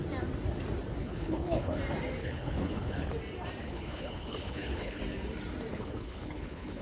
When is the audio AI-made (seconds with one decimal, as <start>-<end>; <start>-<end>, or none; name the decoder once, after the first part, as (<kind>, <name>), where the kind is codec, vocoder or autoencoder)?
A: 1.0-1.8 (codec, HILCodec); 2.2-3.1; 3.6-5.0; 5.7-6.8